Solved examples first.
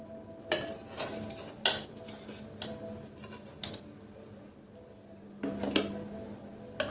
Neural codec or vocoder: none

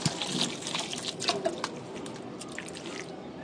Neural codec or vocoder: none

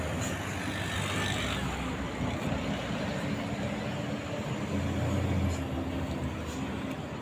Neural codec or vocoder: none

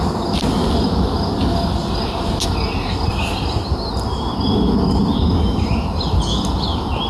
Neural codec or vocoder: none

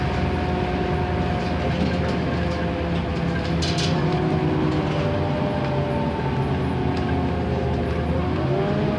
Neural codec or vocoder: none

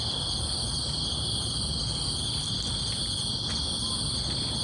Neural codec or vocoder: none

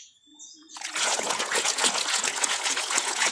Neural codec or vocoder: vocoder, Vocos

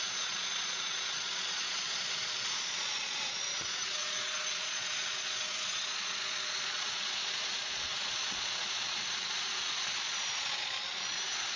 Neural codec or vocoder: vocoder, Vocos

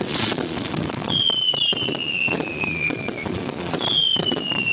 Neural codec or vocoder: vocoder, Vocos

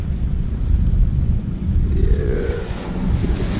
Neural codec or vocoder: vocoder, Vocos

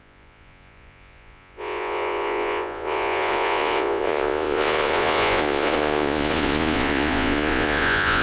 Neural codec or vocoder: vocoder, Vocos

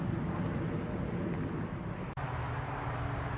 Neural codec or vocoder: none